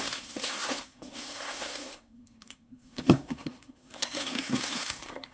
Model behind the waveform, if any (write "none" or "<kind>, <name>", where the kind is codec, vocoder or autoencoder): codec, SNAC